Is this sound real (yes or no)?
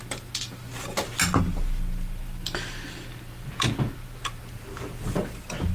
yes